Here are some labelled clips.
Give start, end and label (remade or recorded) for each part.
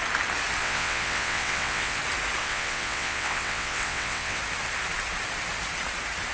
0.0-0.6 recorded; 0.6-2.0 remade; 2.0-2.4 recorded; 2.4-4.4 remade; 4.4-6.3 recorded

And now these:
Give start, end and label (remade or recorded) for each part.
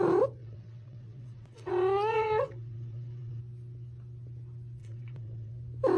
0.0-0.4 recorded; 0.4-1.7 remade; 1.7-2.1 recorded; 2.1-3.4 remade; 3.4-4.8 recorded; 4.8-5.5 remade; 5.5-6.0 recorded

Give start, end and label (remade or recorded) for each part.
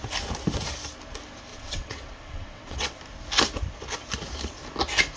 0.0-1.5 recorded; 1.5-3.0 remade; 3.0-5.2 recorded